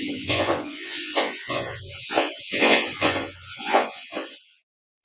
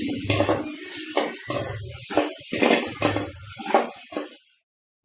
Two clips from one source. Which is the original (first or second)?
second